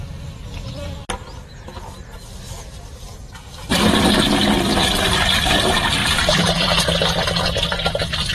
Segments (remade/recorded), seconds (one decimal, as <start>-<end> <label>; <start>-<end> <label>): 0.0-6.0 recorded; 6.0-6.8 remade; 6.8-8.3 recorded